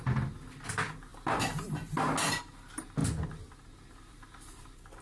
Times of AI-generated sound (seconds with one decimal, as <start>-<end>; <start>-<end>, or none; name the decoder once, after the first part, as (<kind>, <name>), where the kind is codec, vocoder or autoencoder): none